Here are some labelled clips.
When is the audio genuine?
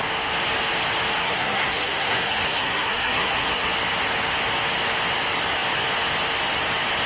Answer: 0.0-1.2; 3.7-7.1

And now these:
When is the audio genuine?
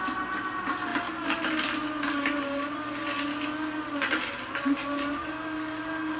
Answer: 0.0-6.2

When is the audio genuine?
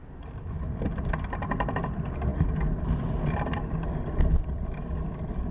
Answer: 0.0-5.5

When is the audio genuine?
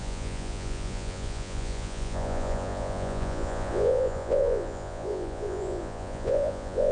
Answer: none